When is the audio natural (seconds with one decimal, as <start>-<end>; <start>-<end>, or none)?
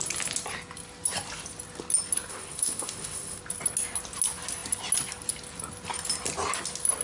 0.0-2.3; 3.4-7.0